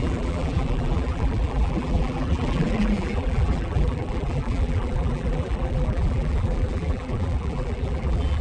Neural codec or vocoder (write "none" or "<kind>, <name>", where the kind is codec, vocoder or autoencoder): vocoder, BigVGAN v2